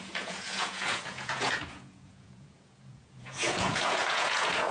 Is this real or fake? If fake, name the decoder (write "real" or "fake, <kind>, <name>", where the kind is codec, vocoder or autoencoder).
fake, vocoder, Vocos